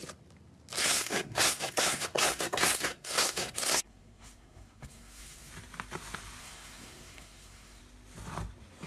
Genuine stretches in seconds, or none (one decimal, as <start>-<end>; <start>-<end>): 0.0-0.8; 5.5-6.4; 7.8-8.9